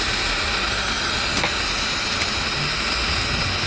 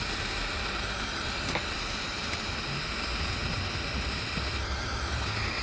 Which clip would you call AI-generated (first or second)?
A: second